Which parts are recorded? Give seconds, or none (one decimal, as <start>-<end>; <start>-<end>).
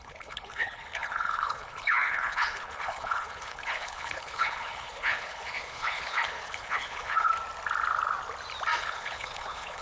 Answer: 7.3-8.8